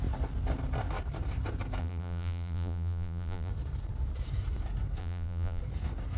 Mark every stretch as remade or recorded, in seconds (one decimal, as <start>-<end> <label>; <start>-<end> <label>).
0.0-1.8 recorded; 1.8-3.5 remade; 3.5-5.0 recorded; 5.0-5.6 remade; 5.6-6.2 recorded